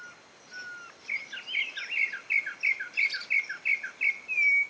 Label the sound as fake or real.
real